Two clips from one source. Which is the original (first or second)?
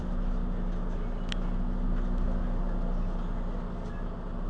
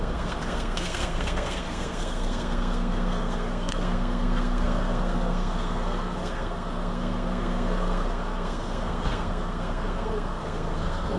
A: first